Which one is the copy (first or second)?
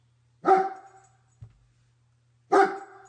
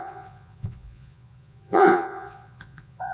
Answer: second